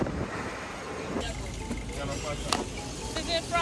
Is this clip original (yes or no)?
yes